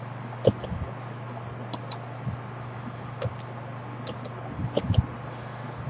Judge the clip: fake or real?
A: real